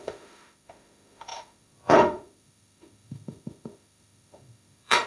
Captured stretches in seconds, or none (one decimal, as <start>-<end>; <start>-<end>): none